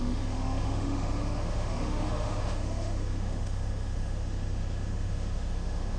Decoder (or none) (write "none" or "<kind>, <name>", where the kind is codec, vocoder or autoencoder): autoencoder, DAC-VAE